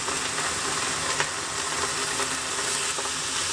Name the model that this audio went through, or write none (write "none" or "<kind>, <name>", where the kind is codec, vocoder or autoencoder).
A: none